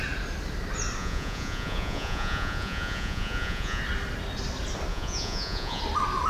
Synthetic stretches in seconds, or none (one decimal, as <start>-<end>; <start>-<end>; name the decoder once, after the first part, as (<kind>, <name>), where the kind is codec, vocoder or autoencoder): 1.0-3.8 (vocoder, Vocos); 4.9-5.8